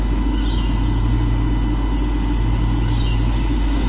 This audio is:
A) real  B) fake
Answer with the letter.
A